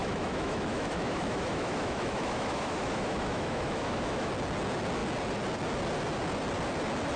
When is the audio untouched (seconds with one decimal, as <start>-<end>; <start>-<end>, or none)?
4.3-7.2